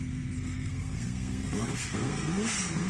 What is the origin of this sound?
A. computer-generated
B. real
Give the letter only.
A